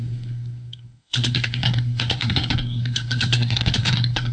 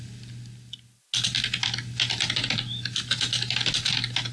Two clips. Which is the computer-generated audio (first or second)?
first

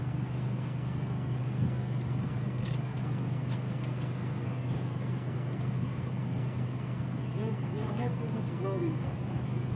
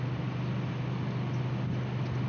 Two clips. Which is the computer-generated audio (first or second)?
first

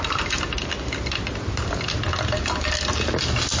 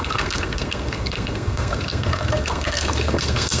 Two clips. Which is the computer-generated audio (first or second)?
second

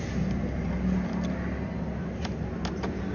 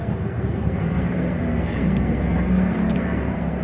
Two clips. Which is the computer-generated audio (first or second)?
second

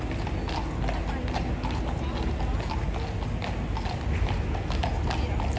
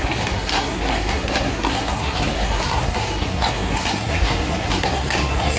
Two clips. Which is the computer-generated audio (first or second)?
second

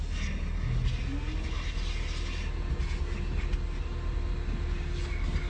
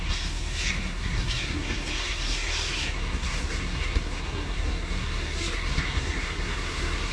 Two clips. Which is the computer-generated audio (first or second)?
second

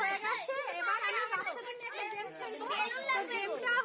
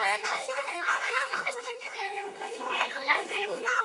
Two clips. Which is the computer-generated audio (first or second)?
second